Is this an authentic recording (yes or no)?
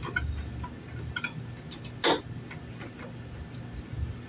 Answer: no